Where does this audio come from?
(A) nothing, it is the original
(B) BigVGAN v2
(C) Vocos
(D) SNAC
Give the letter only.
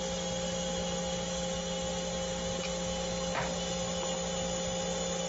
A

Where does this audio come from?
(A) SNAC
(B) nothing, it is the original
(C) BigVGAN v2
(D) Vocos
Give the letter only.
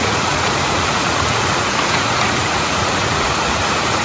D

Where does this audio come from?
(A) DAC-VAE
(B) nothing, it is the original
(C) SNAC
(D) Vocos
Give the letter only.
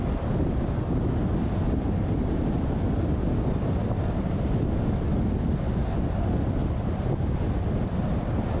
B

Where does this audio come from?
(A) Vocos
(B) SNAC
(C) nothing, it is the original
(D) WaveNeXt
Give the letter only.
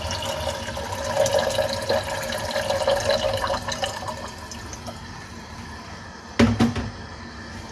C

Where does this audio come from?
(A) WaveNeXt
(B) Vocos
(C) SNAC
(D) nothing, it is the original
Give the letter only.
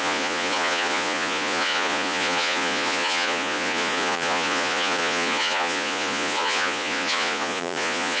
B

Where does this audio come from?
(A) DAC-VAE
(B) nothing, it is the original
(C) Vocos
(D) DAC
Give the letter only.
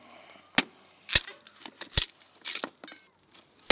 B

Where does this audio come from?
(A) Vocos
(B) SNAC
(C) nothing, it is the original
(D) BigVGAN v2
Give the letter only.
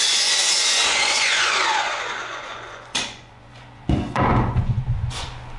A